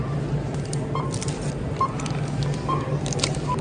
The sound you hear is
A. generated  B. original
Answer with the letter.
B